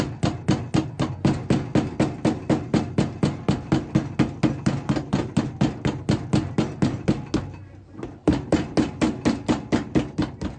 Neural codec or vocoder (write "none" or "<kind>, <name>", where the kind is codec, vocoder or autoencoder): none